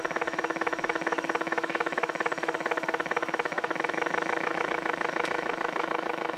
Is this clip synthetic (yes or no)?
yes